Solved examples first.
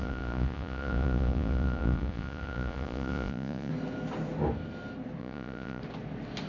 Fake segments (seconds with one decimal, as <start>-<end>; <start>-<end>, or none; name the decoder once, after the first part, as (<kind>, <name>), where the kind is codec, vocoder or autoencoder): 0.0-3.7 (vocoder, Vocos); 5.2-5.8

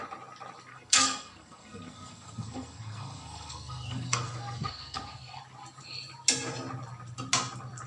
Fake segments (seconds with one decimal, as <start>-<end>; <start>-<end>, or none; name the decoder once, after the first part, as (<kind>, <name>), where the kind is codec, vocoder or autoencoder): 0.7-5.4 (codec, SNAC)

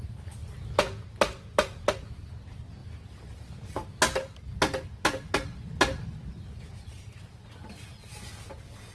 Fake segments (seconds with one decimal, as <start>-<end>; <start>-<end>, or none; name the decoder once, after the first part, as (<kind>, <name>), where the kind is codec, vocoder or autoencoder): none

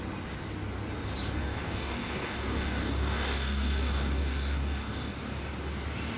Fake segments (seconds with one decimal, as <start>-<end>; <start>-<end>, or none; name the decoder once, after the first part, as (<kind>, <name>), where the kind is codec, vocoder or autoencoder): 1.4-5.1 (codec, DAC)